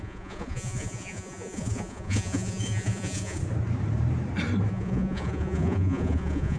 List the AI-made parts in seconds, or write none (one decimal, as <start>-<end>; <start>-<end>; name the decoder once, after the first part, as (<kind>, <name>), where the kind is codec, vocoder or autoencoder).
0.0-3.4 (vocoder, Vocos); 4.7-6.6